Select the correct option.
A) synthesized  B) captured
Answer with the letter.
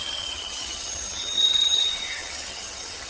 A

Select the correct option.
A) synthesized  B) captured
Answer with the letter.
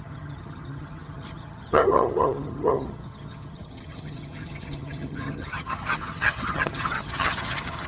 A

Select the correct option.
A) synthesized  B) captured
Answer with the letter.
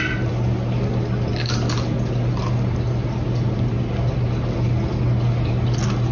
B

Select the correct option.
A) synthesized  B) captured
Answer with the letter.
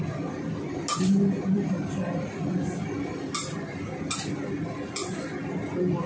B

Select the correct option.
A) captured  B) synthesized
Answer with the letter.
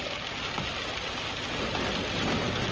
A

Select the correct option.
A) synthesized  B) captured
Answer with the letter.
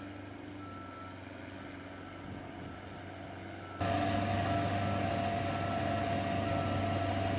B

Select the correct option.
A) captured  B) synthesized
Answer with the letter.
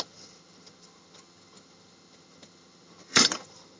B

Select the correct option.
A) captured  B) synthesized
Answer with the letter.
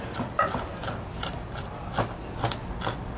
A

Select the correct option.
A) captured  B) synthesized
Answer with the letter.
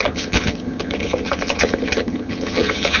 B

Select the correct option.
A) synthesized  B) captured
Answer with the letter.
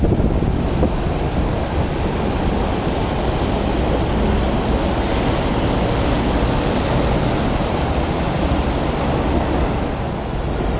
B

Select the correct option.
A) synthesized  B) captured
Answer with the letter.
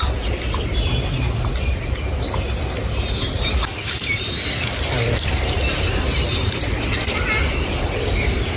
B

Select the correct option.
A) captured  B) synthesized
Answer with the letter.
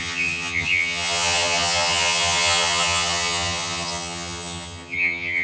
B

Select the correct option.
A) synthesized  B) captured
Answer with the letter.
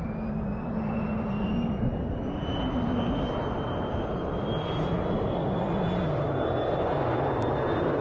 B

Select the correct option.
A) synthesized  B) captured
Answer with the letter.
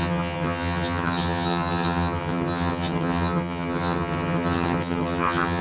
A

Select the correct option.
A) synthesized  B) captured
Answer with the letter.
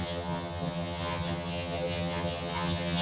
A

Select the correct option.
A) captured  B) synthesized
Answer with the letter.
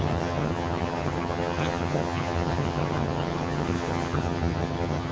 B